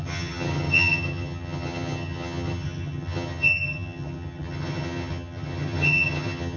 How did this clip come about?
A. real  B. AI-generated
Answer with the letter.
B